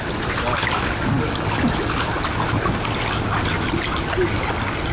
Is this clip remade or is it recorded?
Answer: recorded